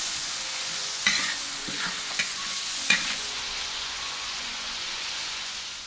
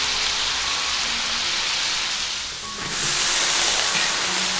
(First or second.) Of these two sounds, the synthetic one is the first